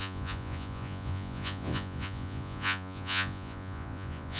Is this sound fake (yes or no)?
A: yes